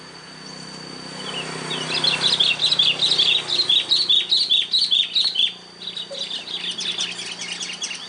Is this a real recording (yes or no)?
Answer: yes